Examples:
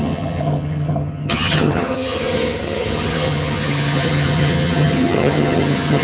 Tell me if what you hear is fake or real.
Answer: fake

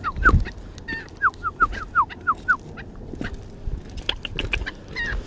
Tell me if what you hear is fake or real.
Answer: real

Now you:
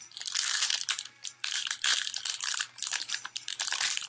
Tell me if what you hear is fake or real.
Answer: fake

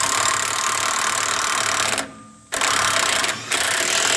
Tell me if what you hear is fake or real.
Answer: real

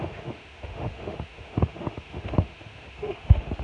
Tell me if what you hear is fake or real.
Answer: fake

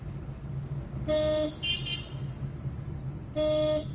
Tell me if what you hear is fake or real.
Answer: real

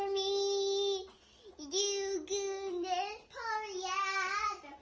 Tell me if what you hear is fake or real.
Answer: real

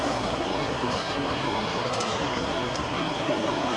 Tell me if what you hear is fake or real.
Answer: fake